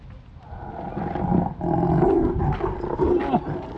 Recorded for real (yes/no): yes